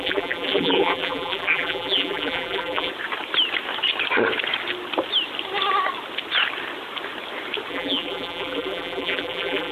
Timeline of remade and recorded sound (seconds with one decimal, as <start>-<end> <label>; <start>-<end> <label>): 0.0-2.9 remade; 2.9-7.7 recorded; 7.7-9.7 remade